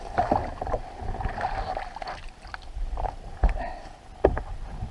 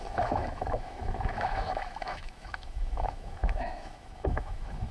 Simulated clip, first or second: second